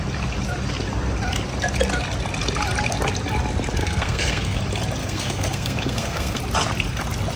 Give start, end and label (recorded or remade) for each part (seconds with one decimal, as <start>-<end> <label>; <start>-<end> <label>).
0.0-3.8 recorded; 3.8-4.6 remade; 4.6-5.0 recorded; 5.0-6.4 remade; 6.4-7.4 recorded